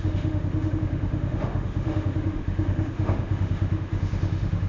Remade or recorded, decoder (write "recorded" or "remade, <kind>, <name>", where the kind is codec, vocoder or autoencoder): remade, autoencoder, DAC-VAE